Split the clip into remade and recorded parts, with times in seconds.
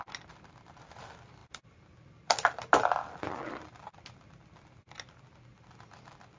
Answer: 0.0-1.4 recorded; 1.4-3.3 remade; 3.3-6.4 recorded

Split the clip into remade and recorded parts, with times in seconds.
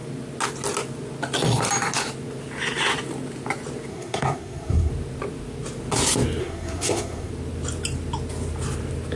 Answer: 0.0-3.9 recorded; 3.9-4.9 remade; 4.9-6.4 recorded; 6.4-7.3 remade; 7.3-9.2 recorded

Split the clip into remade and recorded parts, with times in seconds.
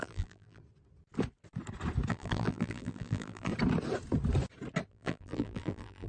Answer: 0.0-0.6 remade; 0.6-2.1 recorded; 2.1-3.5 remade; 3.5-4.9 recorded; 4.9-6.1 remade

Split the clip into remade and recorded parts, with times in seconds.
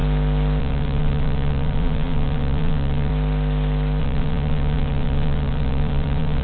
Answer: 0.0-0.6 recorded; 0.6-3.1 remade; 3.1-4.0 recorded; 4.0-6.4 remade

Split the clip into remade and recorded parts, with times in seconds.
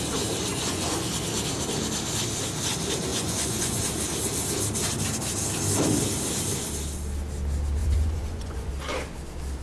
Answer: 0.0-0.5 recorded; 0.5-1.1 remade; 1.1-3.1 recorded; 3.1-3.8 remade; 3.8-7.8 recorded; 7.8-8.7 remade; 8.7-9.6 recorded